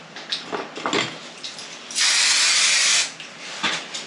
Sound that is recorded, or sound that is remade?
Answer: recorded